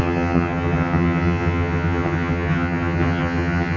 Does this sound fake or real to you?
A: fake